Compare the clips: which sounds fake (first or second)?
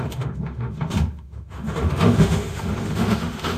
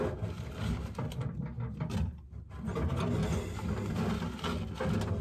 first